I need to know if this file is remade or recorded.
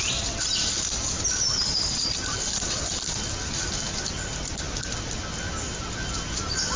recorded